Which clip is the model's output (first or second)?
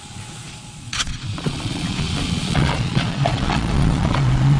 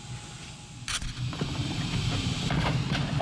first